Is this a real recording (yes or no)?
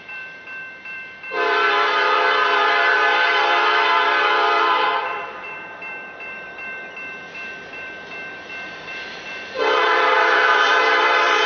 no